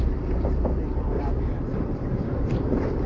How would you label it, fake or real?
fake